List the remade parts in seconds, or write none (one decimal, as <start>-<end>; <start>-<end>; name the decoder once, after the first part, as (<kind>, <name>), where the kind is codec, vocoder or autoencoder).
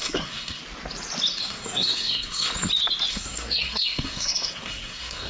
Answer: 0.0-0.6 (codec, SNAC); 1.4-2.5; 3.1-5.3